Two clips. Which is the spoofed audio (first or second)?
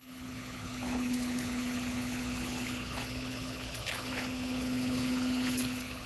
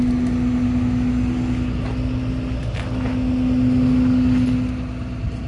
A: first